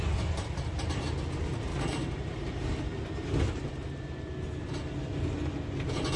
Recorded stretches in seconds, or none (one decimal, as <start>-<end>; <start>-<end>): 0.0-1.7; 2.8-6.2